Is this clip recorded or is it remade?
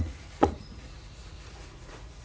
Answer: remade